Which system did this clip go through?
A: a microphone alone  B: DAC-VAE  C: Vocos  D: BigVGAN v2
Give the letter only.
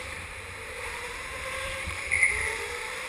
D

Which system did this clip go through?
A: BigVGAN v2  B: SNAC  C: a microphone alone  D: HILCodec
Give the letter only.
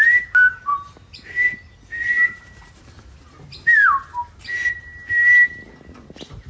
C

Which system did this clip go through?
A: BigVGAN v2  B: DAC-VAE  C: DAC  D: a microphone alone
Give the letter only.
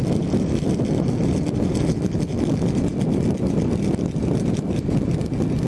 A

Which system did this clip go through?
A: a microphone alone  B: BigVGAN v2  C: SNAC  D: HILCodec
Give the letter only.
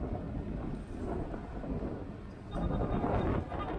A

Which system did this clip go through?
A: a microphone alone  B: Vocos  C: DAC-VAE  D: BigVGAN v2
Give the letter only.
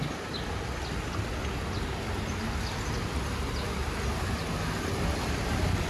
A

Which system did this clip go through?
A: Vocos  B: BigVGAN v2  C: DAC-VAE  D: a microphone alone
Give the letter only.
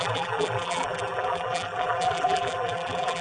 B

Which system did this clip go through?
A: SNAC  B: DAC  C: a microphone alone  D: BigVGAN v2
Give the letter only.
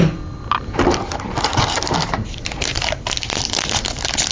D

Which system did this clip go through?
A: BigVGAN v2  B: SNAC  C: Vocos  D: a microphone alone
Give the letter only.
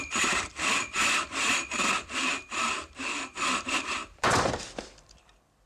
A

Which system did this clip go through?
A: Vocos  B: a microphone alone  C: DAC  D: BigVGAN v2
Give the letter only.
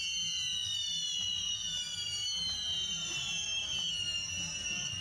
B